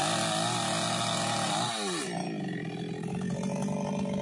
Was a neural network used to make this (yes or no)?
no